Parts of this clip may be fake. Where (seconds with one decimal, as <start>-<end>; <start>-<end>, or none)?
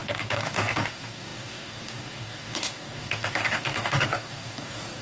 0.0-5.0